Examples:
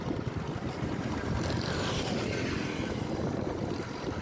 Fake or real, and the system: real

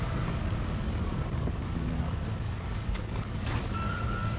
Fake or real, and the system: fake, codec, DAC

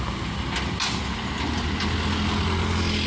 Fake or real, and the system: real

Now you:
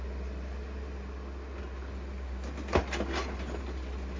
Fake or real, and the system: real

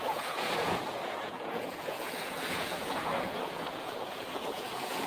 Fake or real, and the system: fake, vocoder, Vocos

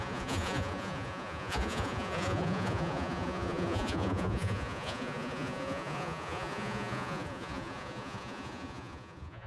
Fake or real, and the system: fake, vocoder, Vocos